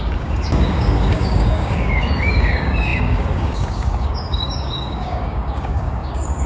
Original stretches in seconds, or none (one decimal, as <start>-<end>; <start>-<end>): none